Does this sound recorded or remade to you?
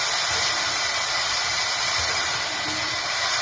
recorded